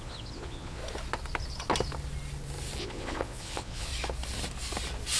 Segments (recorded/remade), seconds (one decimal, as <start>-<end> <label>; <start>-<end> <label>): 0.0-0.8 remade; 0.8-2.8 recorded; 2.8-3.9 remade; 3.9-5.2 recorded